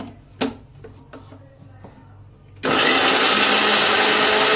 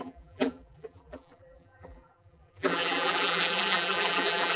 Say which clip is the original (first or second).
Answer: first